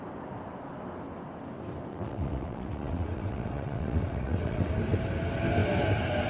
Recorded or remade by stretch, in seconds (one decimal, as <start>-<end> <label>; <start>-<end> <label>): 0.0-1.9 recorded; 1.9-4.7 remade; 4.7-6.3 recorded